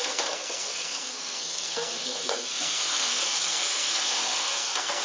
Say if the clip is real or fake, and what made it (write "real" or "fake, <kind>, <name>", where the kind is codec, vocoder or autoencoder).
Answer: fake, codec, SNAC